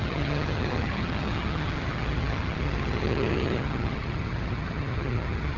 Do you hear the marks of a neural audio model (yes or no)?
yes